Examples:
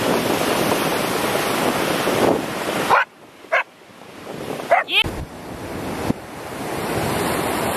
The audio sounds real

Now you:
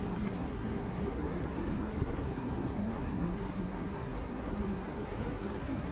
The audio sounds fake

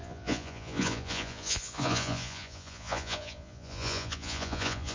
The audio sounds fake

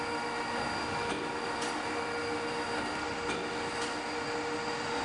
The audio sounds real